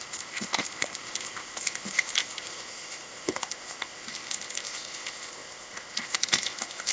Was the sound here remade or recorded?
remade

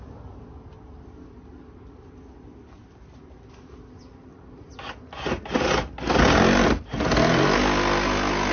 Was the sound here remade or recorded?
recorded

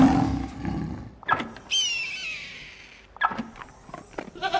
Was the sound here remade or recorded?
recorded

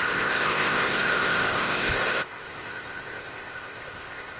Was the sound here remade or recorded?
remade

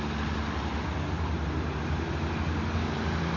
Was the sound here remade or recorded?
recorded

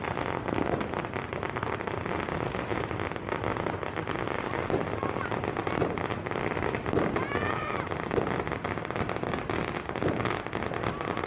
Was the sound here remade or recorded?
recorded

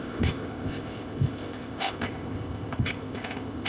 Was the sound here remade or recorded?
remade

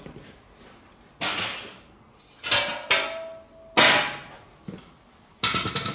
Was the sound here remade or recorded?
recorded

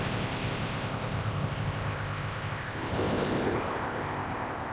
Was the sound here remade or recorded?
remade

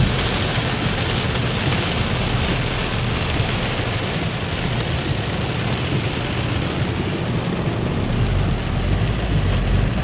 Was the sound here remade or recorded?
recorded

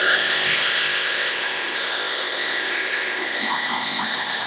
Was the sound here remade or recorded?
remade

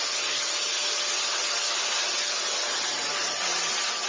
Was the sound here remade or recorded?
recorded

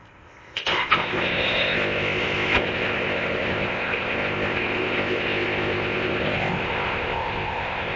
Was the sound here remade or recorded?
remade